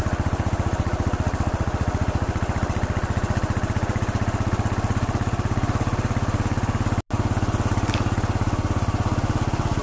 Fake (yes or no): no